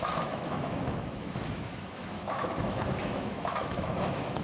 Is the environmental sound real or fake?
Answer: fake